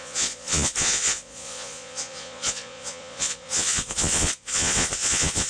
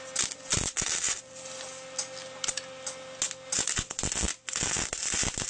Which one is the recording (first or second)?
second